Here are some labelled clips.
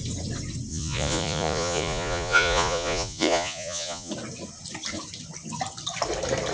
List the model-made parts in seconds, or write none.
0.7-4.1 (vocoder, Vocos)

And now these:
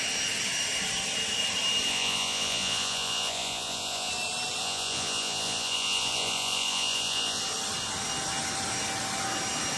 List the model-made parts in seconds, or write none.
1.9-4.1 (vocoder, Vocos); 4.6-7.4

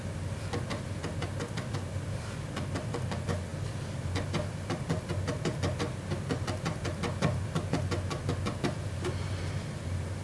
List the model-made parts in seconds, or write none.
none

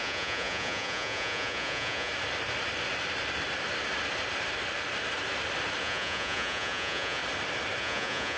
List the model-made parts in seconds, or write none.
0.0-2.1 (vocoder, Vocos); 5.8-7.2; 7.8-8.4